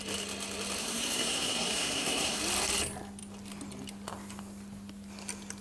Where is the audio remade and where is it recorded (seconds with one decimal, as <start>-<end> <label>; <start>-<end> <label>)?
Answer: 0.0-0.8 recorded; 0.8-2.4 remade; 2.4-5.6 recorded